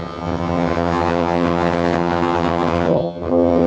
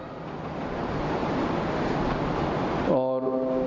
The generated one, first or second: first